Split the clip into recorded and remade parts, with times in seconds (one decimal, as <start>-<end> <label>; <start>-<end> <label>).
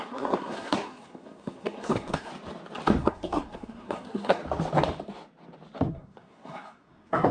0.0-2.3 remade; 2.3-3.0 recorded; 3.0-4.4 remade; 4.4-5.9 recorded; 5.9-7.3 remade